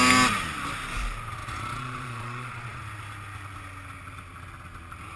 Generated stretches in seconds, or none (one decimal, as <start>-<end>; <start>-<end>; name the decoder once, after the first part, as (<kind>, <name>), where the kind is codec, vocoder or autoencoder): 1.4-2.8 (vocoder, Vocos)